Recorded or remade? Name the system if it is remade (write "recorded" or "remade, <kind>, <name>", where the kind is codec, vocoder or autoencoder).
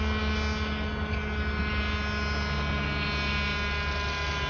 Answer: recorded